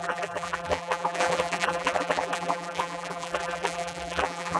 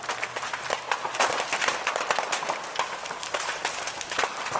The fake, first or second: first